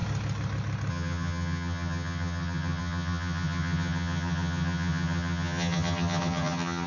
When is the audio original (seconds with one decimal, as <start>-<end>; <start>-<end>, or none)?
0.0-0.9